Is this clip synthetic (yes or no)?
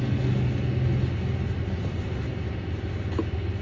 no